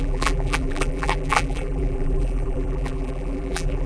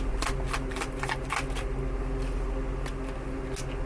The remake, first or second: first